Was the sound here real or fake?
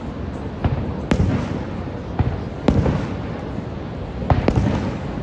real